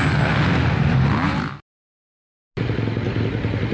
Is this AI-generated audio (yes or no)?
no